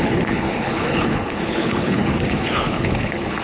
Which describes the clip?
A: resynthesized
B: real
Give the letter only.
A